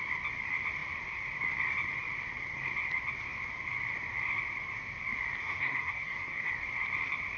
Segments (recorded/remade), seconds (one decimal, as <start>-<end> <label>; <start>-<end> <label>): 0.0-5.4 recorded; 5.4-6.5 remade; 6.5-7.4 recorded